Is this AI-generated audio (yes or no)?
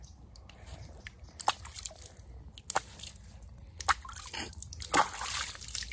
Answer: no